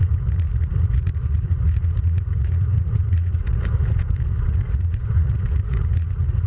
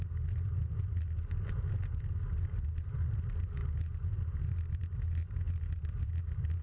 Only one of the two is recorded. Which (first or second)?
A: second